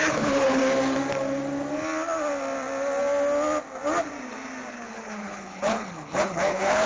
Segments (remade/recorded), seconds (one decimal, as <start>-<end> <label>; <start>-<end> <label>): 0.0-0.6 remade; 0.6-4.7 recorded; 4.7-6.9 remade